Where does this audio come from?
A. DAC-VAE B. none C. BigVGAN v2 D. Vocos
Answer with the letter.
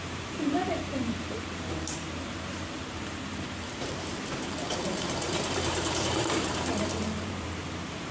C